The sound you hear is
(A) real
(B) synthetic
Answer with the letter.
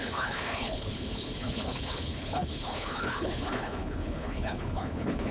B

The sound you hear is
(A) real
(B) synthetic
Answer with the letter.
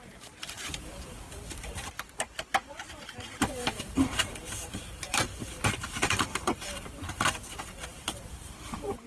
B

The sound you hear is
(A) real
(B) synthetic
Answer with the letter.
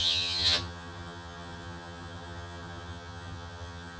B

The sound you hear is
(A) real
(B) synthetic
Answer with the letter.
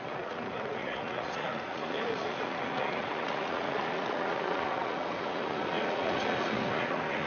B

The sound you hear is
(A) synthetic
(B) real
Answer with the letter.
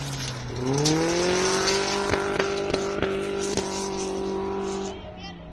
B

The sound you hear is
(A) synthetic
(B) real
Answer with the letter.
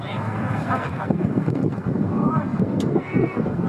A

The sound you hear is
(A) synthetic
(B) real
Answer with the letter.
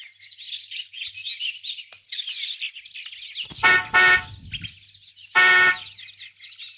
B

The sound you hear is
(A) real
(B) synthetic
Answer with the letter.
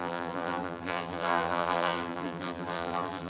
B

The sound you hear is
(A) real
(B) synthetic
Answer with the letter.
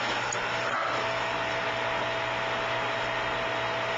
A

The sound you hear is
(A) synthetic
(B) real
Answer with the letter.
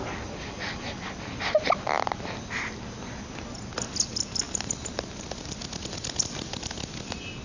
B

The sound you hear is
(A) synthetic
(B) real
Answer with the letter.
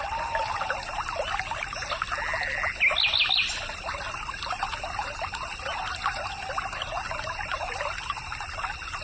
B